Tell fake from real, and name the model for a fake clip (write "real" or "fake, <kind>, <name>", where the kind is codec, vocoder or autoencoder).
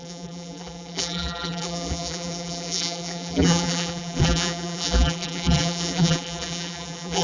fake, vocoder, BigVGAN v2